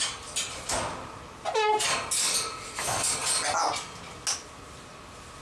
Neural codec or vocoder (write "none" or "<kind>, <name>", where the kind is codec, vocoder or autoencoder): none